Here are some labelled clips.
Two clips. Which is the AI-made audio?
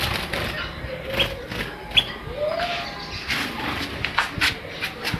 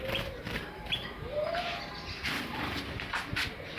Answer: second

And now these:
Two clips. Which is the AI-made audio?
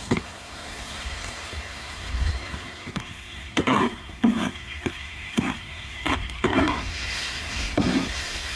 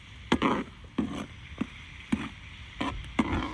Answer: first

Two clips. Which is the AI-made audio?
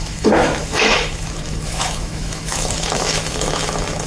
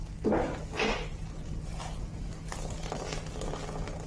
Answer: first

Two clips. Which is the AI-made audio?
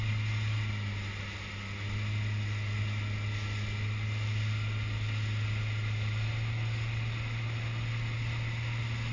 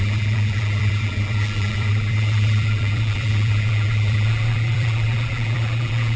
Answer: second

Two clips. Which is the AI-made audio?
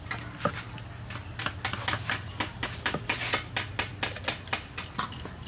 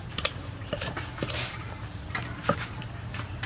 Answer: second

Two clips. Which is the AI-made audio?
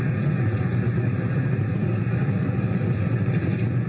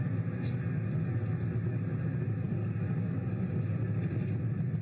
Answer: first